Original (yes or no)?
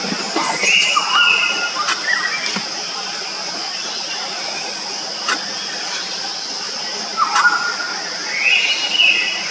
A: yes